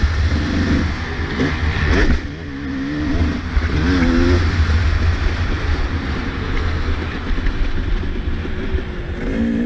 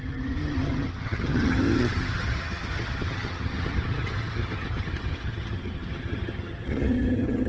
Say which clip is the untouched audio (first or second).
first